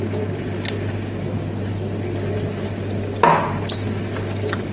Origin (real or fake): real